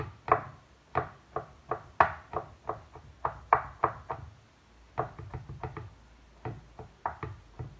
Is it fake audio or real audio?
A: real